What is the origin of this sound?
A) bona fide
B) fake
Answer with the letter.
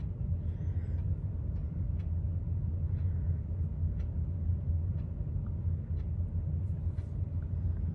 A